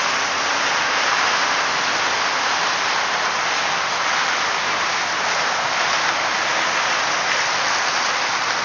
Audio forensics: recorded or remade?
recorded